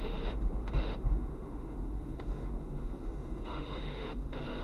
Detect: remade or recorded remade